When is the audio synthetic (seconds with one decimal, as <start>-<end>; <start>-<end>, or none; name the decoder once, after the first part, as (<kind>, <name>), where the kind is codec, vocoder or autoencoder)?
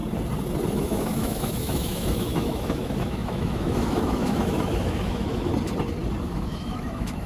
0.7-5.5 (autoencoder, DAC-VAE); 6.2-7.3